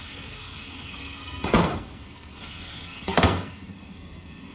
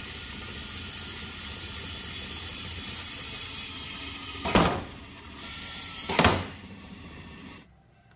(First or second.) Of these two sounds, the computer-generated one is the first